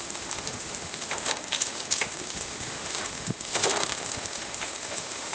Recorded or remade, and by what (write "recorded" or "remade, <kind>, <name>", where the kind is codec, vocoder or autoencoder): remade, autoencoder, DAC-VAE